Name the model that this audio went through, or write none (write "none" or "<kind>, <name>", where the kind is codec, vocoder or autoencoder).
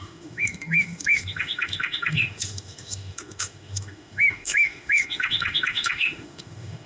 autoencoder, DAC-VAE